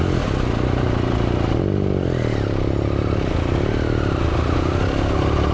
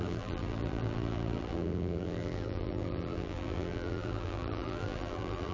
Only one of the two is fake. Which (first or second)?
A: second